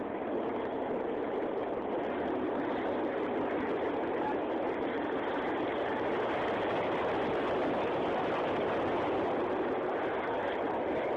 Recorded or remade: recorded